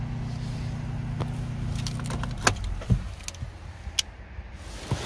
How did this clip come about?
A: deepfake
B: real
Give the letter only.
B